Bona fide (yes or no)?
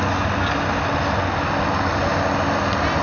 yes